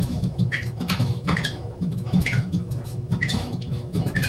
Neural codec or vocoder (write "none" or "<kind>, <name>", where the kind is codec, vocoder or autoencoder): autoencoder, DAC-VAE